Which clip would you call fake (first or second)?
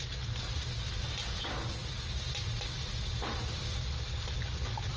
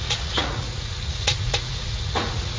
second